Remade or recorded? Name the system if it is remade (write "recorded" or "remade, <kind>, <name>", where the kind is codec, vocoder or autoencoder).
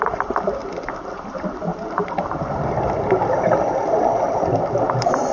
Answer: remade, vocoder, BigVGAN v2